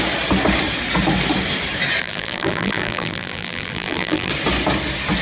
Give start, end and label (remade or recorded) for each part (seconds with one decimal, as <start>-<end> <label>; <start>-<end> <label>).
0.0-2.0 recorded; 2.0-4.3 remade; 4.3-5.2 recorded